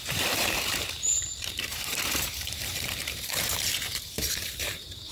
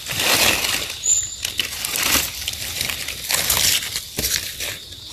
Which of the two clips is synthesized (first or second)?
first